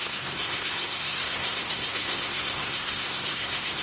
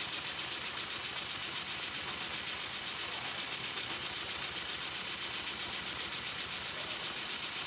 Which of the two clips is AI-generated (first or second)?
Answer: first